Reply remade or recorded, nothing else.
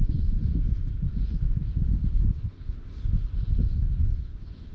remade